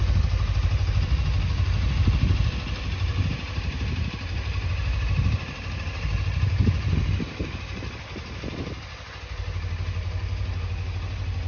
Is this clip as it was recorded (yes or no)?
yes